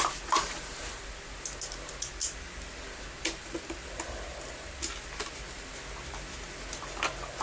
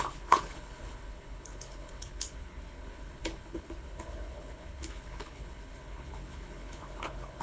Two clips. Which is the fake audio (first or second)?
second